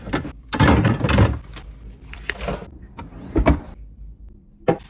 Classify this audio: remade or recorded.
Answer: remade